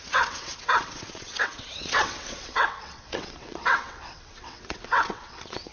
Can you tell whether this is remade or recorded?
remade